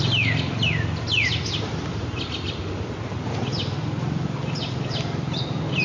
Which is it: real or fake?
real